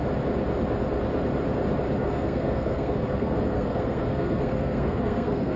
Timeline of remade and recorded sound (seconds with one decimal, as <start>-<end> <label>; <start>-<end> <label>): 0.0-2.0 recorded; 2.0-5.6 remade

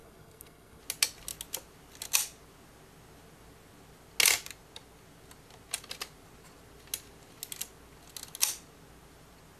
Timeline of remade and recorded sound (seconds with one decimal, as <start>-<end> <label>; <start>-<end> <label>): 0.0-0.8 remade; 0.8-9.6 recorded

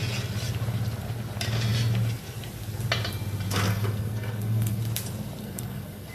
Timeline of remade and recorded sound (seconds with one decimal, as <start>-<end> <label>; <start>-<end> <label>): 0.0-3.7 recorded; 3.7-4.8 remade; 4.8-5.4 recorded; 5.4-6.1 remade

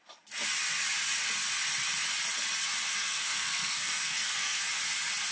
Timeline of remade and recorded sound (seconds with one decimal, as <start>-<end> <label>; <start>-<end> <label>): 0.0-2.9 recorded; 2.9-4.6 remade; 4.6-5.3 recorded

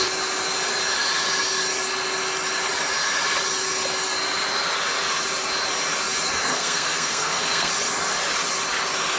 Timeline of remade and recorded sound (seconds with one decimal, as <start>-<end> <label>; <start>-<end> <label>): 0.0-6.5 recorded; 6.5-7.7 remade; 7.7-9.2 recorded

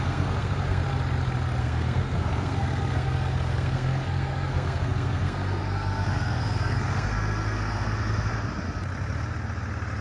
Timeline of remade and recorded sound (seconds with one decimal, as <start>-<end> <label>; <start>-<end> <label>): 0.0-0.8 remade; 0.8-1.6 recorded; 1.6-8.3 remade; 8.3-10.0 recorded

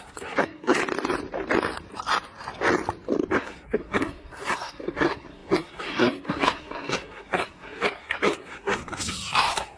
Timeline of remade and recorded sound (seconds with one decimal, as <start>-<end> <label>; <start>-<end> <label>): 0.0-0.8 remade; 0.8-3.3 recorded; 3.3-9.8 remade